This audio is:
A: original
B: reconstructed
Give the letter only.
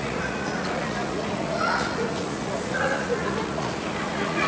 B